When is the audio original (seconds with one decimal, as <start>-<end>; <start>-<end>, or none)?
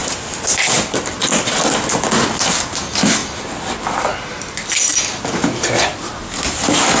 0.0-7.0